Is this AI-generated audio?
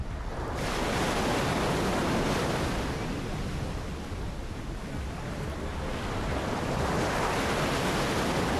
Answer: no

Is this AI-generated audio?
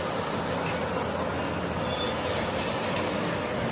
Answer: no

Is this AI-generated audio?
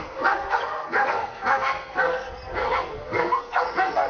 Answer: yes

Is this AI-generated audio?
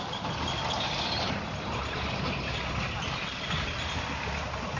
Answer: no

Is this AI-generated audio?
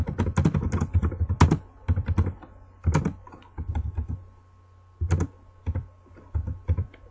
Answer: no